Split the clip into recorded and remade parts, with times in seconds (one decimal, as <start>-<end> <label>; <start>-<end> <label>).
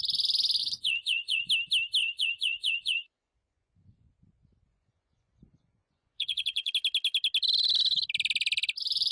0.0-0.6 recorded; 0.6-1.5 remade; 1.5-2.0 recorded; 2.0-4.1 remade; 4.1-4.7 recorded; 4.7-6.7 remade; 6.7-9.1 recorded